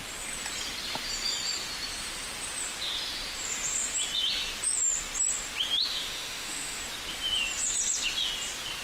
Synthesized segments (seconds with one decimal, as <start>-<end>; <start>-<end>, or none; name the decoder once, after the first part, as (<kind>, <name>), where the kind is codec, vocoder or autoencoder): 5.9-6.8 (autoencoder, DAC-VAE)